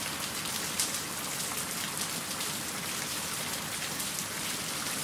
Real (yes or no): yes